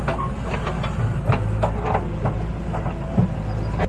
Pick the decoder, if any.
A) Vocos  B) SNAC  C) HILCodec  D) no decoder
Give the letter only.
D